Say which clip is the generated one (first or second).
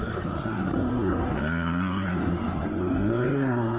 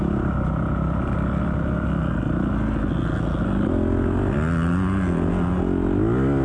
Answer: first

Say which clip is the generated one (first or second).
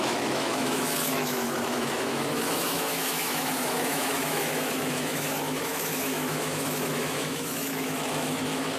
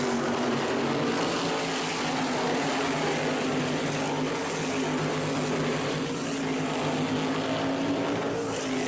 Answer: first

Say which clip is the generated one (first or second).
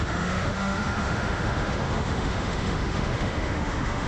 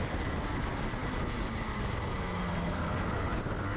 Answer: first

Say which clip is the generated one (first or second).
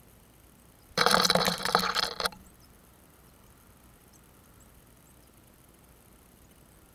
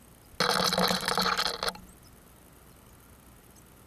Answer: first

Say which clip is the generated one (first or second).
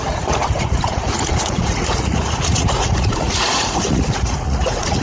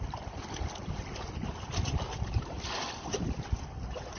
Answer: first